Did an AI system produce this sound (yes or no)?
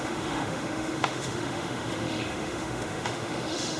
yes